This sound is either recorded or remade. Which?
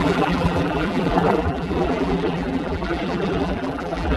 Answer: remade